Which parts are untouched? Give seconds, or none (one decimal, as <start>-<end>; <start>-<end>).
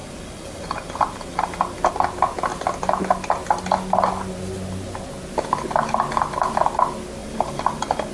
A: 1.9-7.2